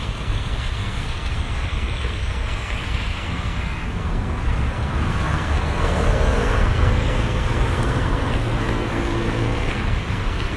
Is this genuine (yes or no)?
no